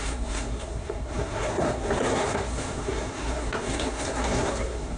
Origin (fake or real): fake